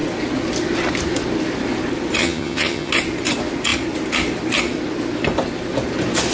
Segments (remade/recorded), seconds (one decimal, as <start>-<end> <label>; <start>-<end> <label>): 0.0-2.2 recorded; 2.2-2.9 remade; 2.9-6.3 recorded